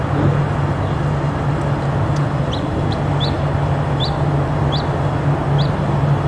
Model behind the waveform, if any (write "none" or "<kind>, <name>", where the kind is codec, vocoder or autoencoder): none